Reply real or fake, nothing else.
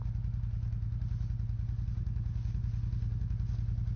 real